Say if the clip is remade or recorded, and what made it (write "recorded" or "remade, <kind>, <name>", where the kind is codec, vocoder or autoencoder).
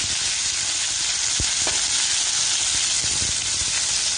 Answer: recorded